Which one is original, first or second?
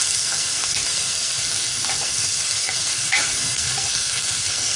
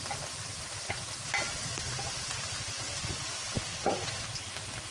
second